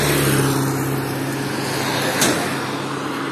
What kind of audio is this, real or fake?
real